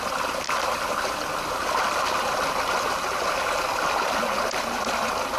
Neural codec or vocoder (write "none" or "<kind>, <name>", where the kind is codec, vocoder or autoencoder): none